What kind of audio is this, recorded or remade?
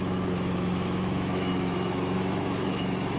remade